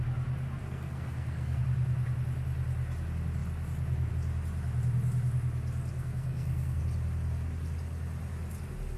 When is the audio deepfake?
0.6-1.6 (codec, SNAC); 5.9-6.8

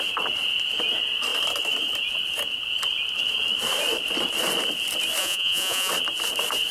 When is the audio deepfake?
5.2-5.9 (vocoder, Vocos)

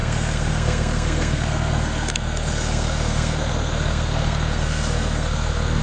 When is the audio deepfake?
0.0-5.8 (codec, SNAC)

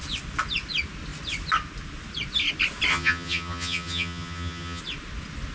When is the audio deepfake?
2.9-4.8 (vocoder, HiFi-GAN)

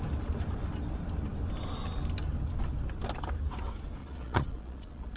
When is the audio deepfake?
4.0-5.2 (vocoder, Vocos)